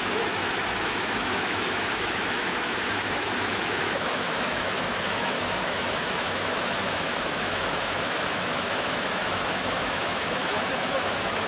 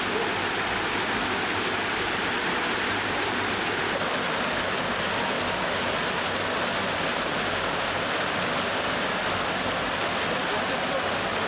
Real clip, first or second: second